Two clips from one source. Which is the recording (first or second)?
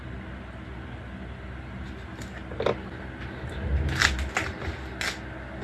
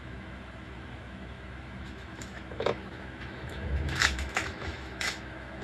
first